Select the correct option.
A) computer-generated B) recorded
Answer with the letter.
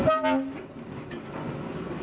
B